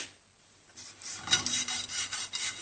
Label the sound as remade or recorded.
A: recorded